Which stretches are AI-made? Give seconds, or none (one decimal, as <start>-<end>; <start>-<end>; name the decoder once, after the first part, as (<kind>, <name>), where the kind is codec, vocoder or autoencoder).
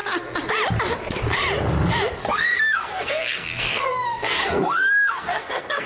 2.2-5.9 (codec, SNAC)